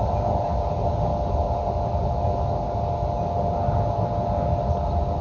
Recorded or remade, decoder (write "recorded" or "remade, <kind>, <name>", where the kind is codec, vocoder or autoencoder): recorded